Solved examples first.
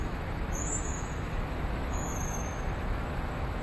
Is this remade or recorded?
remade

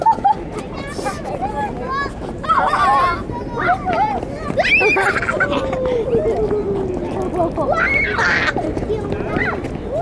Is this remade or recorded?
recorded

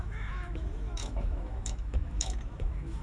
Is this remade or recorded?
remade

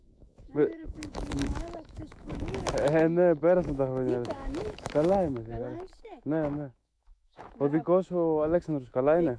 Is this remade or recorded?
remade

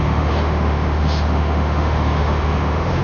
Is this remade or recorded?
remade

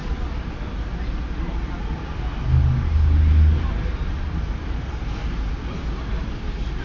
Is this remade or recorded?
recorded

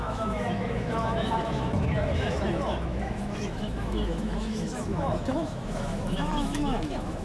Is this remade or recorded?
remade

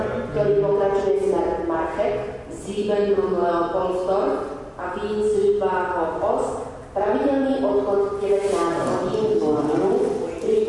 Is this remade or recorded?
recorded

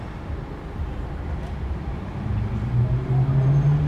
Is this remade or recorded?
recorded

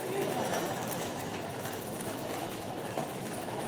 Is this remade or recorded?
remade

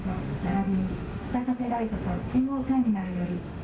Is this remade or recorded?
remade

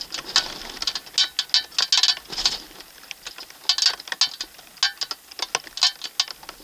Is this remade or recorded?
recorded